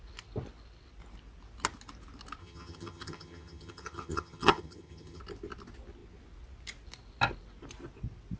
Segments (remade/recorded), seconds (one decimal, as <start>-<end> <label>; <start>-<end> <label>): 0.0-2.4 recorded; 2.4-5.2 remade; 5.2-8.4 recorded